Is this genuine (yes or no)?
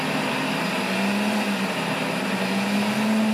yes